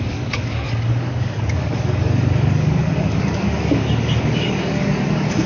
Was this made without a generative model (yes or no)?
no